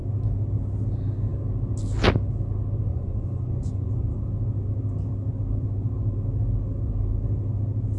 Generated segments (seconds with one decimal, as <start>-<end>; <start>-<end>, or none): 2.9-3.9